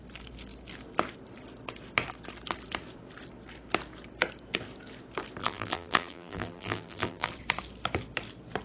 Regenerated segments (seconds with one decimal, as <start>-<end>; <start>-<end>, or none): 5.4-7.3